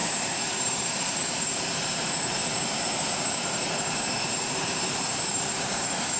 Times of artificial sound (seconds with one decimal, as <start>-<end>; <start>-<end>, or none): 0.0-6.2